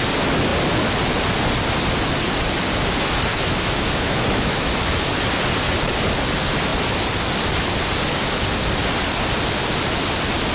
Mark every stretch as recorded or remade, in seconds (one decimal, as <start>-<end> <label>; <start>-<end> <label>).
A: 0.0-3.3 recorded; 3.3-4.7 remade; 4.7-10.5 recorded